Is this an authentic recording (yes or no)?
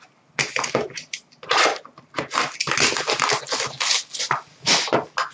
yes